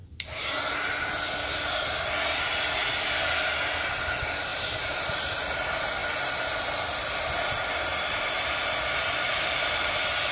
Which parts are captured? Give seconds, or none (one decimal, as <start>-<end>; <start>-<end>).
0.0-4.5; 5.3-10.3